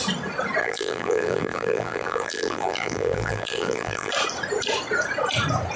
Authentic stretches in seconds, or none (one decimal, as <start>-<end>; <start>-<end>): 0.0-0.6; 4.1-5.8